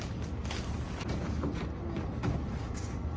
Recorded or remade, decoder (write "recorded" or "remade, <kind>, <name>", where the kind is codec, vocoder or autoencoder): recorded